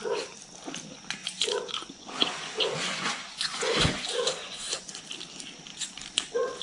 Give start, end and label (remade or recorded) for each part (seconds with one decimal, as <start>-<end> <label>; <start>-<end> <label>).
0.0-1.2 recorded; 1.2-5.0 remade; 5.0-5.7 recorded; 5.7-6.6 remade